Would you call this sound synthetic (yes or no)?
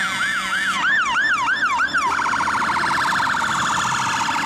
yes